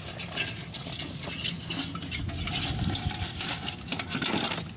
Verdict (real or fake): real